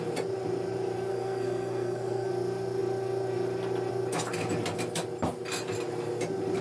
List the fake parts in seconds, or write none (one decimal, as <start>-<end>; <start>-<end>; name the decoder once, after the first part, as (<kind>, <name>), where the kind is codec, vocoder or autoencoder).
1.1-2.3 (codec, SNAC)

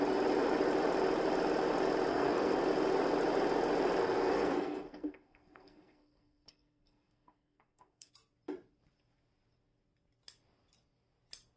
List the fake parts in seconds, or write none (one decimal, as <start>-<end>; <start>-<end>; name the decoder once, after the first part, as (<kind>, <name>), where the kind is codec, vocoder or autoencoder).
2.1-2.6 (codec, SNAC); 4.0-8.1

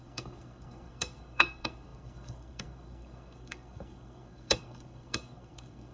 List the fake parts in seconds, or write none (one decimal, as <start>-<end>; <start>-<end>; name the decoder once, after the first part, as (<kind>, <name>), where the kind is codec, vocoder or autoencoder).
0.0-5.9 (codec, SNAC)

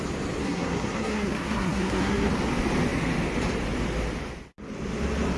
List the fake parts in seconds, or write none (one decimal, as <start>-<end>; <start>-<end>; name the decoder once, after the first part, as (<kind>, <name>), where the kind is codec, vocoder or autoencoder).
0.4-2.3 (codec, SNAC)